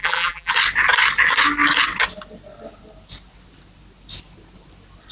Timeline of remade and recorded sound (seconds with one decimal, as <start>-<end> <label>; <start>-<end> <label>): 0.0-0.5 remade; 0.5-5.1 recorded